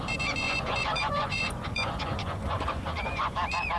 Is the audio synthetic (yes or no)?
yes